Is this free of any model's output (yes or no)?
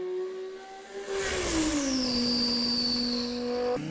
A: yes